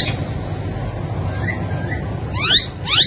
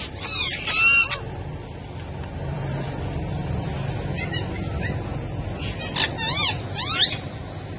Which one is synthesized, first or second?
second